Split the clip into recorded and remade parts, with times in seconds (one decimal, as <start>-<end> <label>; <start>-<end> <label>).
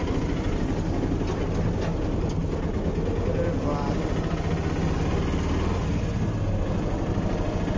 0.0-7.8 recorded